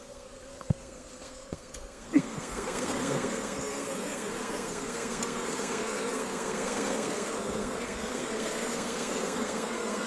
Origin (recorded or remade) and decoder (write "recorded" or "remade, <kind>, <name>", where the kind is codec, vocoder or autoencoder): remade, codec, SNAC